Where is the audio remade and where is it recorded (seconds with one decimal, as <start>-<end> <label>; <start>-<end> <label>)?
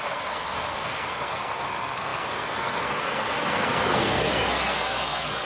0.0-5.5 remade